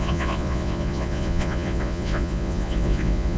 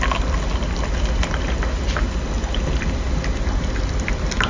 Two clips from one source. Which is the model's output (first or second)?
first